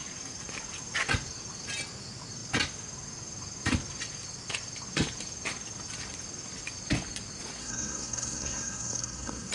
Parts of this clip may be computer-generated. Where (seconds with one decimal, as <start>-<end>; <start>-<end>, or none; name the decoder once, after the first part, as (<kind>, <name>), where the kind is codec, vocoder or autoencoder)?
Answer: 7.6-9.5 (codec, SNAC)